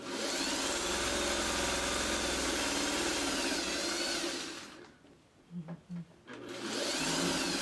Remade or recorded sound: recorded